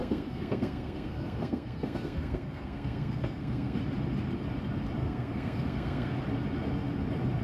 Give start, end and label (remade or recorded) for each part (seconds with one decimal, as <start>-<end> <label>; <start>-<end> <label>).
0.0-3.8 remade; 3.8-5.0 recorded; 5.0-6.2 remade; 6.2-7.4 recorded